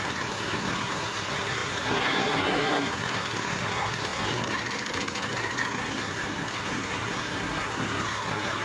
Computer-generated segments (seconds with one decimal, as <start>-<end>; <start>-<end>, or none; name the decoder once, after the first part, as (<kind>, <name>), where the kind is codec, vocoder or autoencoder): 0.0-8.6 (codec, SNAC)